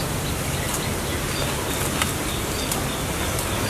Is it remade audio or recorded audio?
recorded